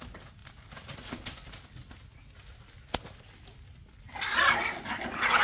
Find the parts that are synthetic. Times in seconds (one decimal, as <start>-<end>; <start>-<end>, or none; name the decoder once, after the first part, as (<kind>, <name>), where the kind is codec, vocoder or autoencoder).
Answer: none